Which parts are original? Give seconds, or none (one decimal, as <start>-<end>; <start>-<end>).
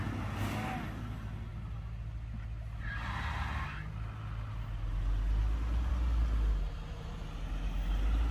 0.0-8.3